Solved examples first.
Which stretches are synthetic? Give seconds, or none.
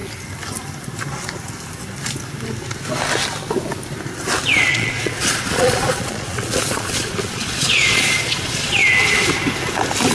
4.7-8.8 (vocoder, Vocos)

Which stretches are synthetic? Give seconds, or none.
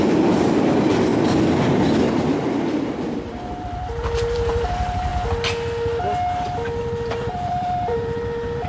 0.0-1.1 (vocoder, BigVGAN v2); 3.6-5.1; 6.8-8.7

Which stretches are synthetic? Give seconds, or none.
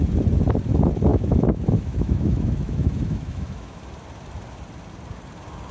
1.1-3.8 (autoencoder, DAC-VAE)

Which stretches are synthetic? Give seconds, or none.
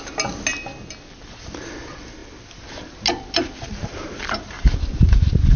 none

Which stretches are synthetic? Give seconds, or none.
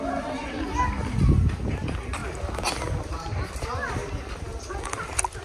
1.0-1.6 (vocoder, BigVGAN v2)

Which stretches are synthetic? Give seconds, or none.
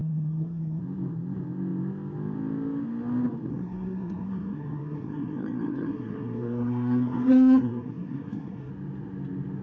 0.0-0.8 (codec, SNAC); 3.5-8.7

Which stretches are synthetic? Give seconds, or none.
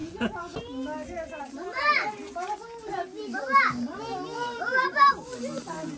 0.0-0.6 (vocoder, Vocos)